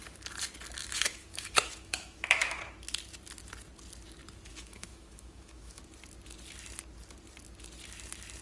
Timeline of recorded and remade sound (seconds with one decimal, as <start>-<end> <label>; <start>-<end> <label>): 0.0-0.8 recorded; 0.8-2.6 remade; 2.6-4.5 recorded; 4.5-5.8 remade; 5.8-8.4 recorded